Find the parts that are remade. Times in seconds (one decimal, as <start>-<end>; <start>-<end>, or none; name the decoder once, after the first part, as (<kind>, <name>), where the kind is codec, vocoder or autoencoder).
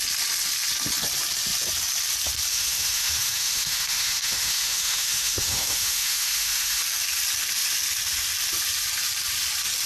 2.5-6.8 (autoencoder, DAC-VAE)